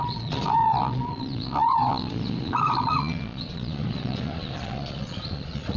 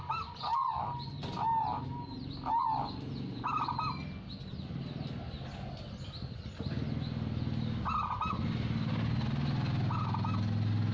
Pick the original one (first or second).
second